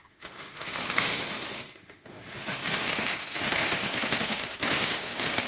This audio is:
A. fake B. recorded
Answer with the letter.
A